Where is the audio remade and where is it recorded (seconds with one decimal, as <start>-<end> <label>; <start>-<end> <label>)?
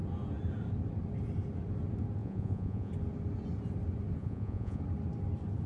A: 0.0-2.2 recorded; 2.2-2.9 remade; 2.9-4.2 recorded; 4.2-4.8 remade; 4.8-5.7 recorded